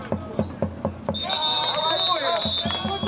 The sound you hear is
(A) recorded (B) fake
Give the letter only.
A